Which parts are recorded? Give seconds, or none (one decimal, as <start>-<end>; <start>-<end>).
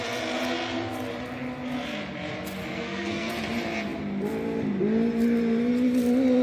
0.0-2.6; 3.3-6.4